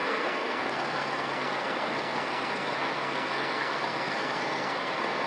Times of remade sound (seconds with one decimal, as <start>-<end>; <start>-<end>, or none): 0.0-5.3